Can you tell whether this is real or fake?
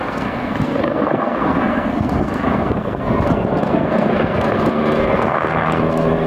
fake